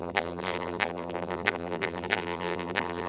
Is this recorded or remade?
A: remade